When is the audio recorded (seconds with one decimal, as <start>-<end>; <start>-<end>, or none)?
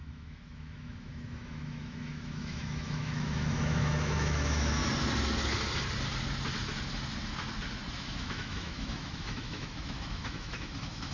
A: 4.8-7.9